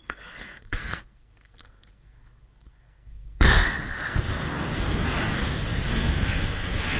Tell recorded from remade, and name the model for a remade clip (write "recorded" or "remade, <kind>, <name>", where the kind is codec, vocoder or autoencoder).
remade, codec, SNAC